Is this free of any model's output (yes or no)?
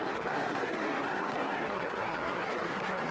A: no